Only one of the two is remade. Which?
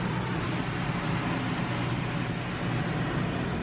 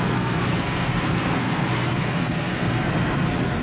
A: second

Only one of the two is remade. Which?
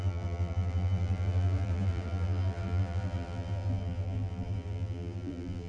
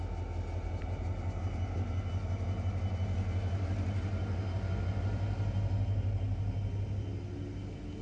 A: first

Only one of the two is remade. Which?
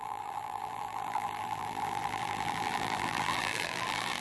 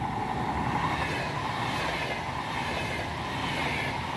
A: first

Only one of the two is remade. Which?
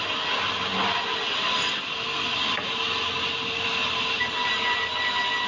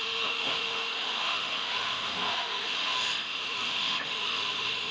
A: second